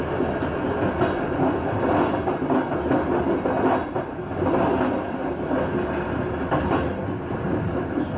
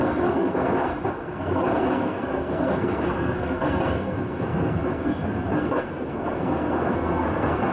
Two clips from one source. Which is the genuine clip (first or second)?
first